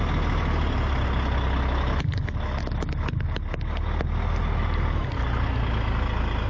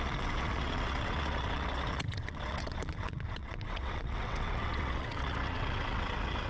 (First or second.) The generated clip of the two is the second